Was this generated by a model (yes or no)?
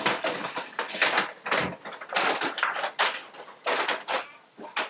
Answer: no